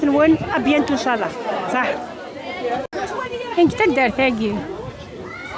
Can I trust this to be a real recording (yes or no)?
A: yes